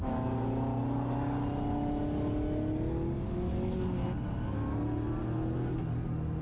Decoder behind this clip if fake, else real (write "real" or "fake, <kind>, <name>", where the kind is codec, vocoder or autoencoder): real